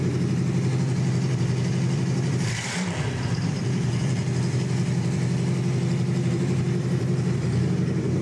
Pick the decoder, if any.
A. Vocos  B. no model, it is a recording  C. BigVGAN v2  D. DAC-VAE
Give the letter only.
C